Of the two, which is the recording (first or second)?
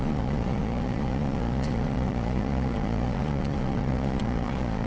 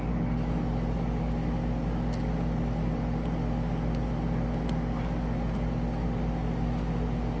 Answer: second